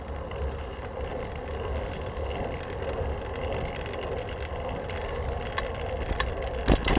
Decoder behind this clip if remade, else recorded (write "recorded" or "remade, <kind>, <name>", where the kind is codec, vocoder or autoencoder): recorded